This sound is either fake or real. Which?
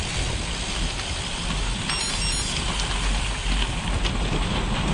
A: real